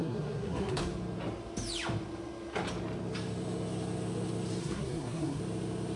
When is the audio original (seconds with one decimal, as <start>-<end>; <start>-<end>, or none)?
0.8-4.6; 5.4-6.0

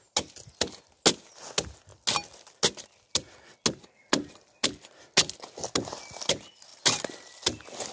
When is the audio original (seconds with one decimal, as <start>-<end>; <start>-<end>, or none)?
0.0-7.9

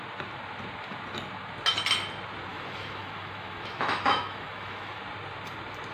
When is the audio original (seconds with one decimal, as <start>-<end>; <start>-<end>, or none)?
0.0-2.5; 5.0-5.9